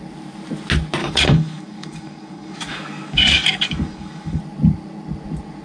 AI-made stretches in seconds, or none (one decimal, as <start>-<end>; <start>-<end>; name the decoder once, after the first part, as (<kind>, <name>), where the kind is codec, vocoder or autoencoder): 1.0-4.4 (codec, DAC)